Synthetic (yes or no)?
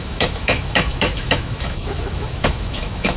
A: yes